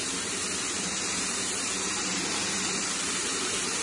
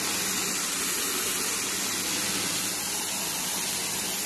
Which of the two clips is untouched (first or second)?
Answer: second